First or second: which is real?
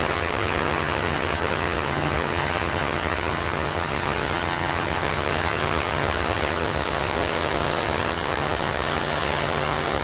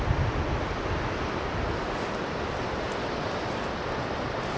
second